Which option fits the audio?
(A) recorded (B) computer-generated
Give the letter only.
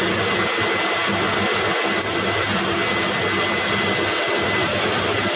A